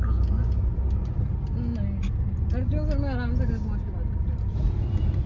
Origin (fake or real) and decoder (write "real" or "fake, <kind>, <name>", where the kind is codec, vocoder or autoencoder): real